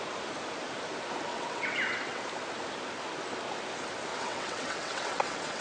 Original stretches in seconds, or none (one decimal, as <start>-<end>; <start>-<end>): 0.0-1.3; 2.2-4.1